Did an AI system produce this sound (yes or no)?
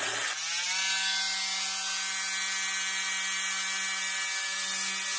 no